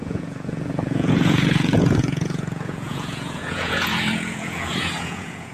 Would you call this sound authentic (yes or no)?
no